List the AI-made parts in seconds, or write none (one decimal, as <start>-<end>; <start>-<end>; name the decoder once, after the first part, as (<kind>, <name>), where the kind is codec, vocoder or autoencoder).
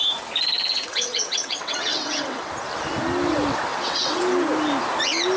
0.7-2.5 (vocoder, WaveNeXt); 3.7-4.2